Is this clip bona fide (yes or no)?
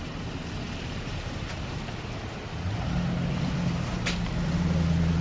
yes